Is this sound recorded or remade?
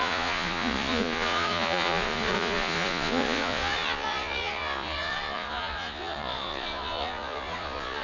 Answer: remade